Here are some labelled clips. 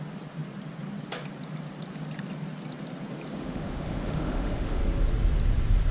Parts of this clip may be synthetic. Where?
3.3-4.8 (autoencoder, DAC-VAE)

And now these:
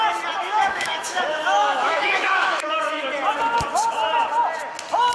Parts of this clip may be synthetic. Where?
0.4-3.1 (autoencoder, DAC-VAE)

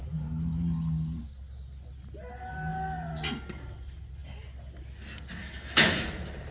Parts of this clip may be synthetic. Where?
5.4-6.0 (autoencoder, DAC-VAE)

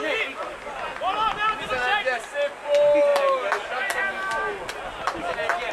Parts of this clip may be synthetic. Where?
none

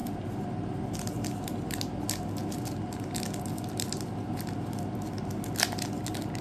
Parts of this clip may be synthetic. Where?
none

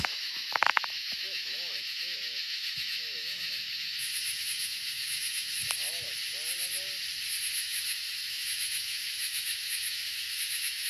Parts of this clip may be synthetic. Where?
0.0-5.6 (autoencoder, DAC-VAE); 7.4-10.9

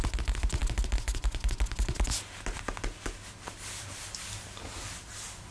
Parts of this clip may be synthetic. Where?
none